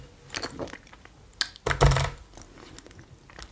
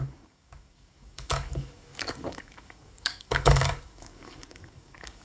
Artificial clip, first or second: second